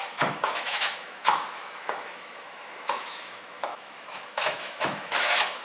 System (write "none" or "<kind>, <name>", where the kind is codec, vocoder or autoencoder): autoencoder, DAC-VAE